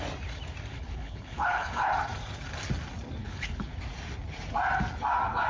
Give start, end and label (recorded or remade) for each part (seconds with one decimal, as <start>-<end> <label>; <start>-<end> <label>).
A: 0.0-0.7 recorded; 0.7-1.9 remade; 1.9-3.2 recorded; 3.2-3.7 remade; 3.7-5.5 recorded